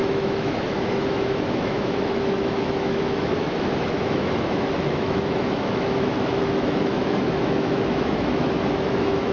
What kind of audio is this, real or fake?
fake